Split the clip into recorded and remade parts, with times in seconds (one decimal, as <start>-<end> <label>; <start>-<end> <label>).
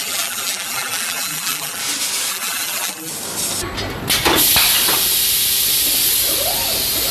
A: 0.0-1.8 remade; 1.8-2.3 recorded; 2.3-3.1 remade; 3.1-7.1 recorded